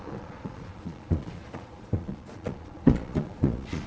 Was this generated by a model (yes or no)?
yes